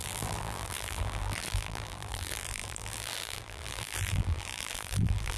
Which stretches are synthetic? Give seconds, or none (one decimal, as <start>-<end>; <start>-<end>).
0.0-5.4